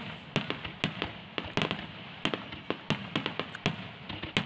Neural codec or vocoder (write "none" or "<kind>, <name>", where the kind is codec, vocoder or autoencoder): none